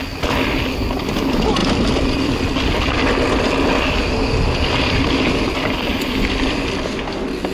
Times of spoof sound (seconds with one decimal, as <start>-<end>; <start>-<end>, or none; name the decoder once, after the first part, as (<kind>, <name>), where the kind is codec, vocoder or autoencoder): none